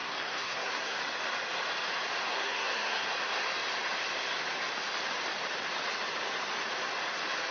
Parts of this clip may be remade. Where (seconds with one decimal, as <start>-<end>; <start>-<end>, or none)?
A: 0.0-1.0; 2.3-3.1